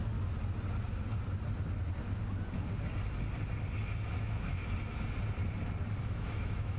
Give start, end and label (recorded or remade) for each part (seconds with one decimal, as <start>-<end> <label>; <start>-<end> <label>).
0.0-4.1 recorded; 4.1-4.6 remade; 4.6-6.0 recorded; 6.0-6.8 remade